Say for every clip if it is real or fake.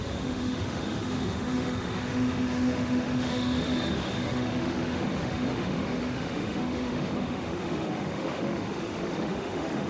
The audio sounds fake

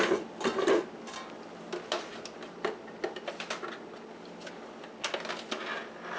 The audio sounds real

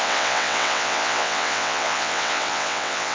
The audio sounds fake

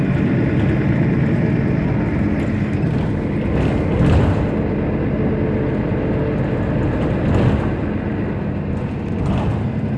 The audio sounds real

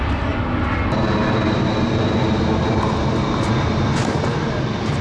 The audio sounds real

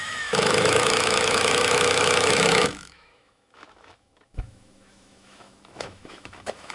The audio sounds fake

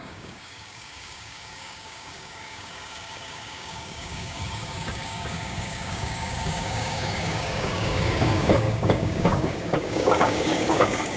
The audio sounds fake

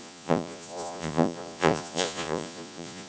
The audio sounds fake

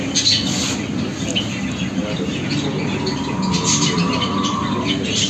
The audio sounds real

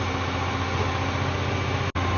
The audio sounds real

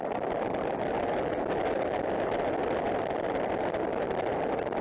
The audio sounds real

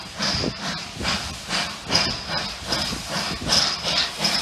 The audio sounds real